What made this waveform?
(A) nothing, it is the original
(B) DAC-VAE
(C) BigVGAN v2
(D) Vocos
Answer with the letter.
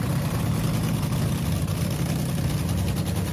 C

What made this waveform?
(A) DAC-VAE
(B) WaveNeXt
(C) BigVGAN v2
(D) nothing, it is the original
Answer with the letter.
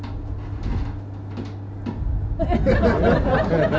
D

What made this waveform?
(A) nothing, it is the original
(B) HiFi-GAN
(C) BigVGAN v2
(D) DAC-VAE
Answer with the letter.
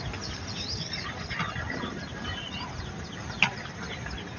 A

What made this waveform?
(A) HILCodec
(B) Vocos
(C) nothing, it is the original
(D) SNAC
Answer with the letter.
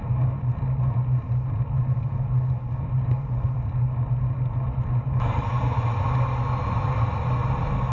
C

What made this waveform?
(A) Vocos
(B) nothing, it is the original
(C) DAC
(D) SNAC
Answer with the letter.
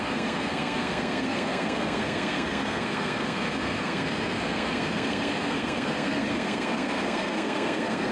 D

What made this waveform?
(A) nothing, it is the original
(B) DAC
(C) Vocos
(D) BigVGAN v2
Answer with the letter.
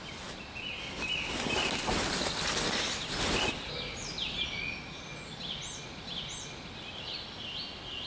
A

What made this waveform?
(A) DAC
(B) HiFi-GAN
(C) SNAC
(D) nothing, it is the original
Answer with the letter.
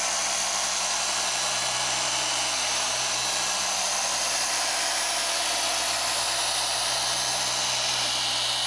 D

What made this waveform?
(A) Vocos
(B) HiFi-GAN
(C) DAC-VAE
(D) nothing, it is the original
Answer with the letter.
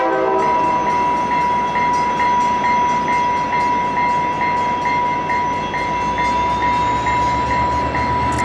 D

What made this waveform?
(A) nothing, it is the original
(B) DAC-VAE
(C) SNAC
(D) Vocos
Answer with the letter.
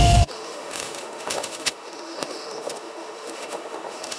B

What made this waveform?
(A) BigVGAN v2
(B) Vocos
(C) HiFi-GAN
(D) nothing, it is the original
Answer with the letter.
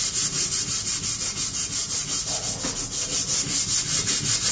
D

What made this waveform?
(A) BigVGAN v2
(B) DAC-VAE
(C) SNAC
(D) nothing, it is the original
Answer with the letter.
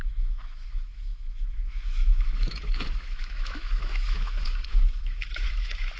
B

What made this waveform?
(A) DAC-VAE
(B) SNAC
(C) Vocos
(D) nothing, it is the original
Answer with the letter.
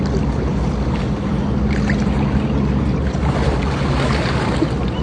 D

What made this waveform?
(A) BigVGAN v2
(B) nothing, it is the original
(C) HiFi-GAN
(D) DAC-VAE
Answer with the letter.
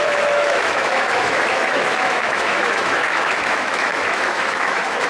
D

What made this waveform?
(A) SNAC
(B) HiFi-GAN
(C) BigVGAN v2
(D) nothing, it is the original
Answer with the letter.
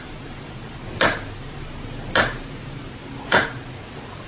D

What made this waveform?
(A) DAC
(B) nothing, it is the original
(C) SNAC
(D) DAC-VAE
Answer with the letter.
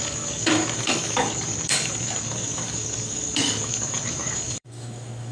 A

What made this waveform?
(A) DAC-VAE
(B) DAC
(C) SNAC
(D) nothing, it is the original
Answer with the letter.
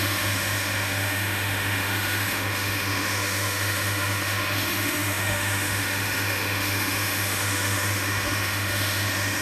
A